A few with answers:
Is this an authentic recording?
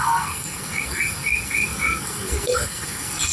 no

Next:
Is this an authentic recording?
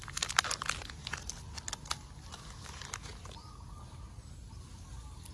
yes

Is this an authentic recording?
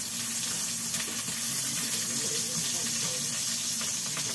yes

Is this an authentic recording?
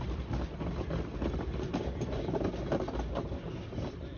yes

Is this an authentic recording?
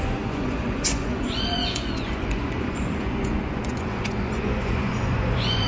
no